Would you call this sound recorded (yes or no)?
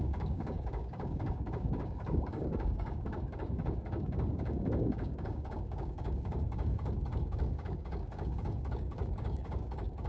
no